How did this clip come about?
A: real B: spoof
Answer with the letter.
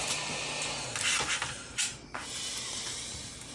A